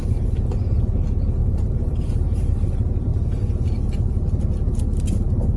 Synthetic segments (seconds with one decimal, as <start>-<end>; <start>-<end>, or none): 1.4-2.5